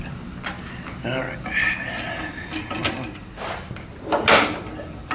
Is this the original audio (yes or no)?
yes